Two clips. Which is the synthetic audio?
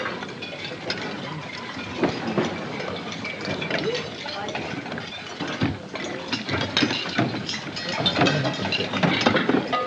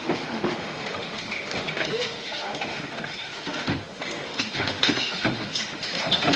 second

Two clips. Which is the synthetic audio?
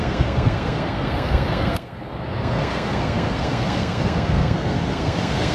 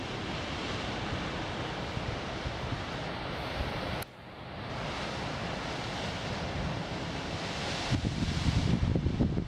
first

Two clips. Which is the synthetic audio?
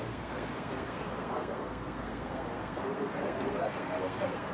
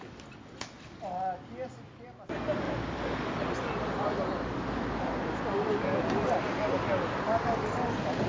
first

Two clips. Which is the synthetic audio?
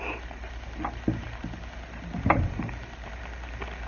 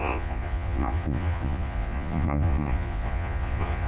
second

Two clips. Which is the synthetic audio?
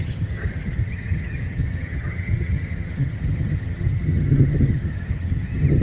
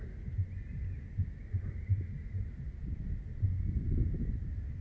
first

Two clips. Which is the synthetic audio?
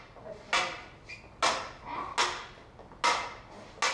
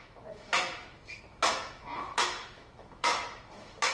second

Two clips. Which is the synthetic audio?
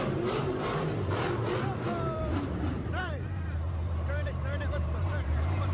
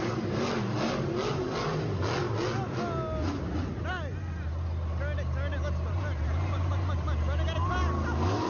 first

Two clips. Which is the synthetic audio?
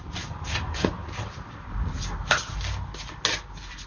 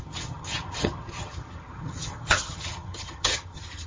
second